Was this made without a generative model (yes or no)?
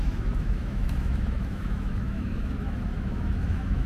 no